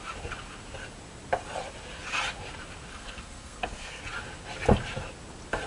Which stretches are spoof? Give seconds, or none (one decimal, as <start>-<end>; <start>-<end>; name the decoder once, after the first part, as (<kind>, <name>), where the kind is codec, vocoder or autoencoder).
2.9-4.0 (codec, SNAC)